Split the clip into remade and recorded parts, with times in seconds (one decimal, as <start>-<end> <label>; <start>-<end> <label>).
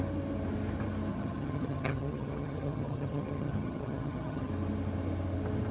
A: 0.0-1.1 recorded; 1.1-4.5 remade; 4.5-5.7 recorded